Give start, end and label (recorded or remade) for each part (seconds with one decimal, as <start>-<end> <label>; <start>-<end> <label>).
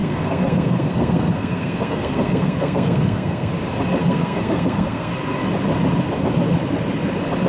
0.0-3.5 remade; 3.5-4.0 recorded; 4.0-5.1 remade; 5.1-7.5 recorded